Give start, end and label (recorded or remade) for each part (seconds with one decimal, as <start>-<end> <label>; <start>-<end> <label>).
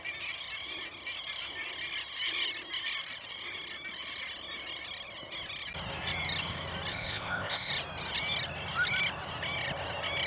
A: 0.0-6.9 recorded; 6.9-7.7 remade; 7.7-10.3 recorded